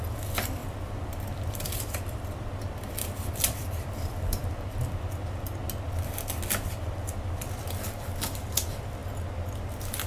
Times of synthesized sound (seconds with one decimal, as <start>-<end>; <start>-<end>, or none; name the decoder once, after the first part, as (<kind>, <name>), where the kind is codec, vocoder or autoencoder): 0.0-4.4 (vocoder, BigVGAN v2); 6.5-9.0; 9.7-10.1

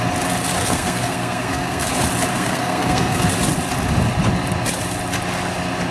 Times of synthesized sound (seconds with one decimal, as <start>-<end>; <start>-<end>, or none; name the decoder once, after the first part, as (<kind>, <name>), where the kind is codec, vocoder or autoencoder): 0.6-1.9 (codec, SNAC); 2.3-3.3

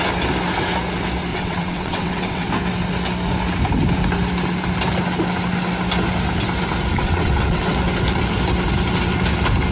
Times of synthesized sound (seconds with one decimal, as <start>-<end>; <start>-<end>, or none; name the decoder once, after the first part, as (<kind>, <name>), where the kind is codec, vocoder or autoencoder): 1.3-2.5 (vocoder, WaveNeXt); 6.9-7.8

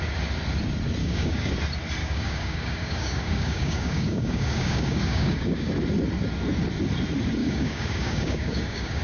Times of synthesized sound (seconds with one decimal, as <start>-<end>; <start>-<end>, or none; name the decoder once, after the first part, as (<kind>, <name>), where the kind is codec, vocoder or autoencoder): 1.0-1.5 (codec, DAC); 2.0-5.7; 7.4-9.0

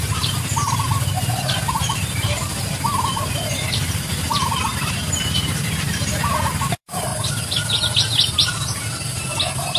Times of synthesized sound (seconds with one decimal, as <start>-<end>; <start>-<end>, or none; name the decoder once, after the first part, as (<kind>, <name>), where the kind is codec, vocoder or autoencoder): 0.0-4.4 (vocoder, BigVGAN v2); 5.8-7.1; 9.2-9.8

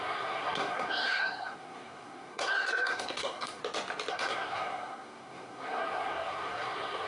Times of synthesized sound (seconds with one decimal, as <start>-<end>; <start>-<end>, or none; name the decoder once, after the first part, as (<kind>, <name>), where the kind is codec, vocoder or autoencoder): 0.0-3.6 (codec, SNAC); 4.1-7.1

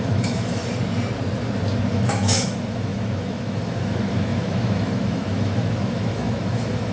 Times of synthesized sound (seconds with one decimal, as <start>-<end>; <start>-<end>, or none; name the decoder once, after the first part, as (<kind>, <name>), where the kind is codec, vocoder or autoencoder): 0.0-0.6 (autoencoder, DAC-VAE); 1.9-6.9

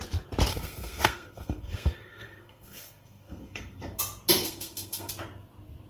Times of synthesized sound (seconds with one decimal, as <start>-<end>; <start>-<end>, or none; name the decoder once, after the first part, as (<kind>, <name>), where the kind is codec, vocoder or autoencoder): 0.5-4.0 (codec, SNAC); 4.4-5.1